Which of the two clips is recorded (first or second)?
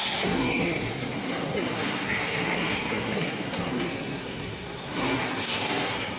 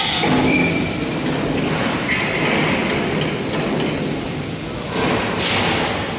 second